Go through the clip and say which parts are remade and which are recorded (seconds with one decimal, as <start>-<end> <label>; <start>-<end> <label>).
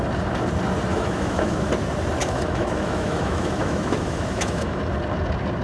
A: 0.0-0.9 recorded; 0.9-1.7 remade; 1.7-2.2 recorded; 2.2-4.8 remade; 4.8-5.6 recorded